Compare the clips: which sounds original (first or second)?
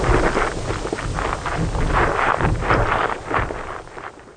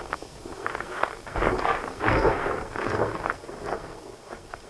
first